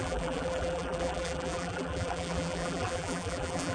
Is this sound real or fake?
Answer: fake